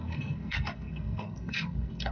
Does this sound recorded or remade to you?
remade